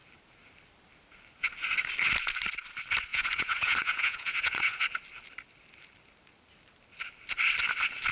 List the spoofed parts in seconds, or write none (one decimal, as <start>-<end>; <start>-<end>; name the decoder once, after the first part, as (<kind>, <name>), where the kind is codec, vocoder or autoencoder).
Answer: 3.1-4.8 (vocoder, Vocos)